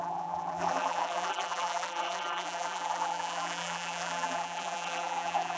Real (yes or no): no